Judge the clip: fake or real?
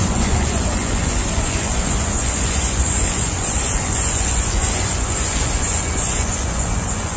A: fake